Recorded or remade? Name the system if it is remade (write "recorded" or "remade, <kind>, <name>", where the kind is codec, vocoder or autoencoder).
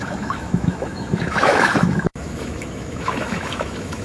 remade, autoencoder, DAC-VAE